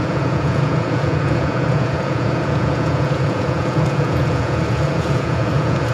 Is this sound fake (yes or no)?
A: yes